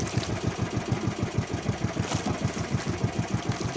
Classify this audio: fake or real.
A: real